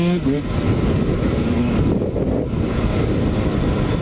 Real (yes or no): yes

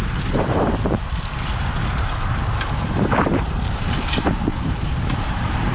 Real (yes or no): no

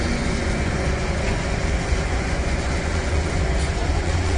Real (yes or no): no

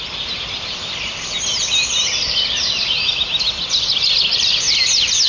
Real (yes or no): yes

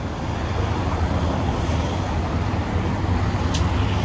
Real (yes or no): yes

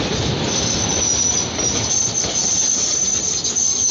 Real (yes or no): yes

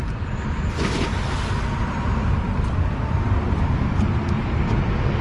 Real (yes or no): yes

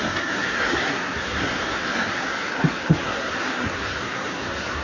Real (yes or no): no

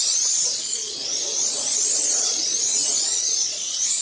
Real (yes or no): no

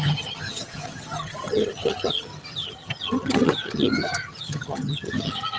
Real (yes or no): no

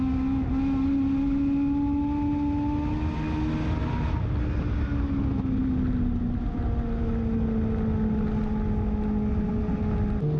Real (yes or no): yes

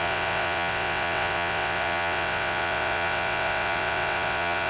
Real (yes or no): no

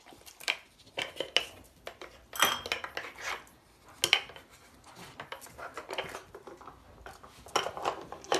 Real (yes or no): yes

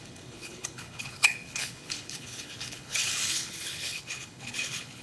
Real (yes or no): no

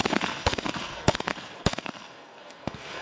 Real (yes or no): no